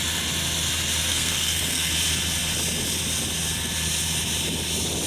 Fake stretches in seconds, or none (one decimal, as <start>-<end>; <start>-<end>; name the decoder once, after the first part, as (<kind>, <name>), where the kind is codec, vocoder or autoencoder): 1.1-1.9 (codec, SNAC)